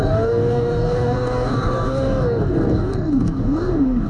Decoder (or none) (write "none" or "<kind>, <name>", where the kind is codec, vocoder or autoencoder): codec, DAC